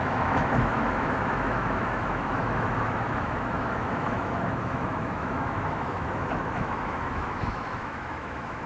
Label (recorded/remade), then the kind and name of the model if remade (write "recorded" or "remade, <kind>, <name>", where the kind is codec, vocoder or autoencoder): remade, autoencoder, DAC-VAE